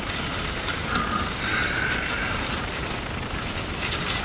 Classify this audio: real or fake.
real